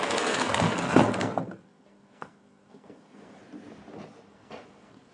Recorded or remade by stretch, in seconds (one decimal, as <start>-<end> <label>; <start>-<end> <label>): 0.0-3.4 remade; 3.4-4.3 recorded; 4.3-5.1 remade